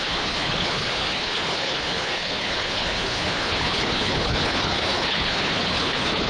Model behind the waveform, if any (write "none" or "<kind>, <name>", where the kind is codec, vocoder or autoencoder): codec, HILCodec